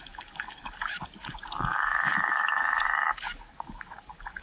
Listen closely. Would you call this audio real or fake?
fake